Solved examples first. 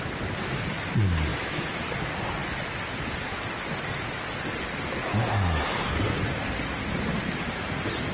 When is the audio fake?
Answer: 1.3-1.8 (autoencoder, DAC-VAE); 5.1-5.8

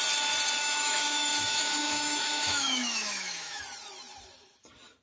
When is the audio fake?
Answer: 0.6-3.6 (autoencoder, DAC-VAE)